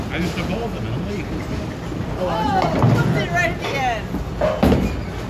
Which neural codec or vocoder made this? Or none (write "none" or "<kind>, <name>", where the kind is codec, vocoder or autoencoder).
none